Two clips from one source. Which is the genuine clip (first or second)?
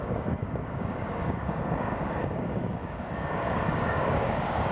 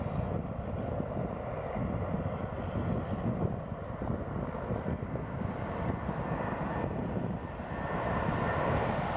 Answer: second